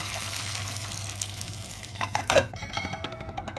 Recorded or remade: remade